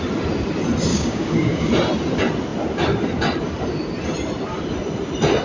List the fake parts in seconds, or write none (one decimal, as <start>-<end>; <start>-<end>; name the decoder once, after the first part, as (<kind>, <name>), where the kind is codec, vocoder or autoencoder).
0.9-1.7 (codec, DAC)